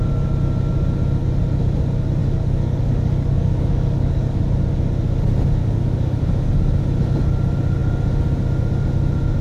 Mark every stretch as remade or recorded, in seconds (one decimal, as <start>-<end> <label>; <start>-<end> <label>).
0.0-2.2 recorded; 2.2-4.4 remade; 4.4-5.6 recorded; 5.6-6.2 remade; 6.2-9.4 recorded